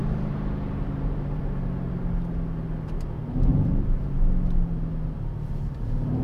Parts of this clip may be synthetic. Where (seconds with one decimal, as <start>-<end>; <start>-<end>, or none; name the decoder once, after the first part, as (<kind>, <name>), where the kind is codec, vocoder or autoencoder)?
0.0-1.4 (vocoder, BigVGAN v2); 3.5-4.0